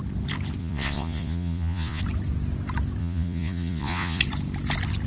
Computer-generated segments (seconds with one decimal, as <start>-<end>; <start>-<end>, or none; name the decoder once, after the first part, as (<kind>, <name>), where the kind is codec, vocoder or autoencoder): 0.6-2.0 (vocoder, Vocos); 3.0-4.2